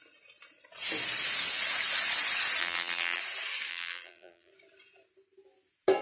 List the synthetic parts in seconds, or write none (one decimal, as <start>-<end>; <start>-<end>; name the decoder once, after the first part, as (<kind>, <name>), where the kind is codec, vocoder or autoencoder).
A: 2.6-3.2 (vocoder, BigVGAN v2); 3.7-4.5